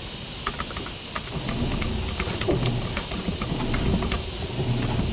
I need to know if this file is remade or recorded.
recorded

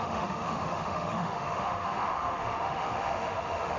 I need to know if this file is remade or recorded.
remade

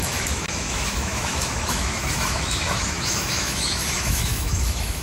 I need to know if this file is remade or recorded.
remade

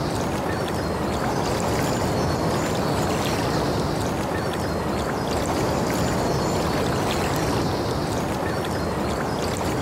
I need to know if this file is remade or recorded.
recorded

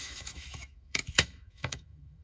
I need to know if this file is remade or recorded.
remade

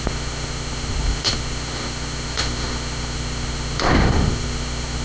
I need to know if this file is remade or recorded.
remade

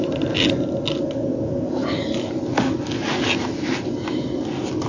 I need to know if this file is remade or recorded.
recorded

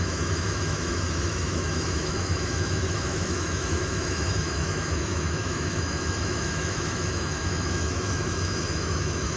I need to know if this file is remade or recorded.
remade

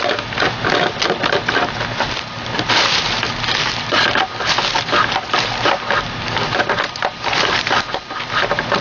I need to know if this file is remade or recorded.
recorded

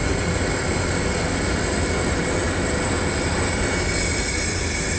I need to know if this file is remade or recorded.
recorded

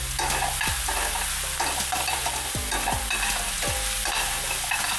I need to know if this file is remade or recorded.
recorded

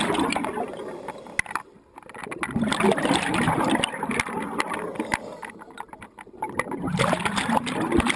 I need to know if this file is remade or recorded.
recorded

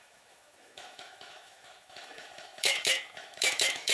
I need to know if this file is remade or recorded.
remade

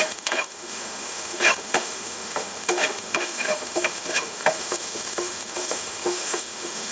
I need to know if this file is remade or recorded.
remade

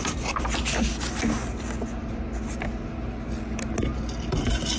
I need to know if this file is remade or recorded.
recorded